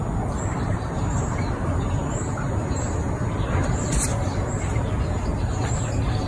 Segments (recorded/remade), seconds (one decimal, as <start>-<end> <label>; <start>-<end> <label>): 0.0-6.3 recorded